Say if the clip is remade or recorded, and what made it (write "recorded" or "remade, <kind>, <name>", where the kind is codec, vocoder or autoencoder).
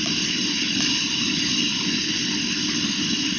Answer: recorded